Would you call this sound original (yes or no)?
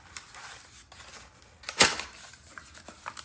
yes